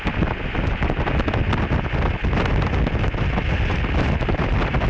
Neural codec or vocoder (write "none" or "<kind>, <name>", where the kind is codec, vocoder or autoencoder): none